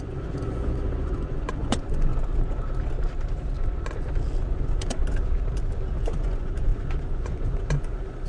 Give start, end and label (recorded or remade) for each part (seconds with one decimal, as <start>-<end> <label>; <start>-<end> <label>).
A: 0.0-2.1 remade; 2.1-4.5 recorded; 4.5-5.0 remade; 5.0-6.0 recorded; 6.0-8.3 remade